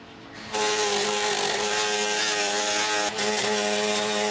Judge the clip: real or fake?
real